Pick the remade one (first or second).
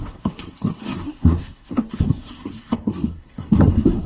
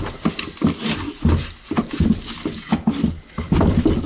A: first